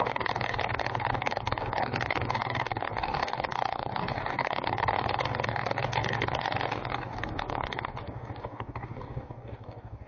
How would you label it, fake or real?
fake